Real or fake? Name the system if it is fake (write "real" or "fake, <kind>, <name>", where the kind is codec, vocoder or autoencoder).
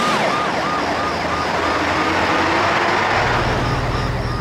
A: real